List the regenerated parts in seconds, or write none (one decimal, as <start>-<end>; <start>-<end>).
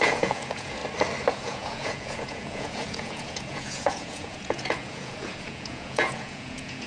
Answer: 0.0-0.8; 1.3-6.9